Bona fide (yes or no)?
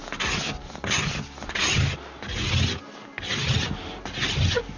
yes